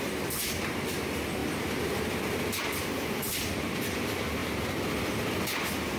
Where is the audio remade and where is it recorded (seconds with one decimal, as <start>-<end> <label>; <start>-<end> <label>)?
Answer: 0.0-6.0 recorded